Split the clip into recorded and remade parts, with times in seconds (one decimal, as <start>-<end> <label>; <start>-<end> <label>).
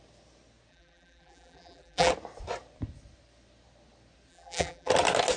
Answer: 0.0-0.7 recorded; 0.7-2.1 remade; 2.1-4.3 recorded; 4.3-4.9 remade; 4.9-5.4 recorded